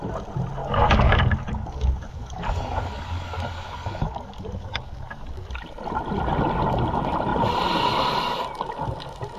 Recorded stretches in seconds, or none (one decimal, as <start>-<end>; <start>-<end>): 0.0-0.6; 5.5-9.4